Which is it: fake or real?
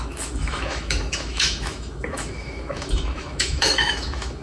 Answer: fake